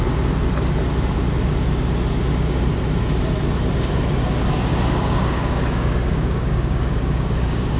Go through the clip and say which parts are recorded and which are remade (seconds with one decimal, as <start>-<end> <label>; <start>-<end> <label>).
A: 0.0-4.7 recorded; 4.7-7.8 remade

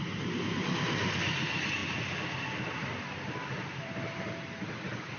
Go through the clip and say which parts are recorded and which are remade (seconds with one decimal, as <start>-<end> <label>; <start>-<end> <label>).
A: 0.0-5.2 recorded